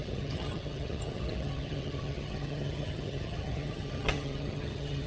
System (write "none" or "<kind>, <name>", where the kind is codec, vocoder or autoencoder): vocoder, HiFi-GAN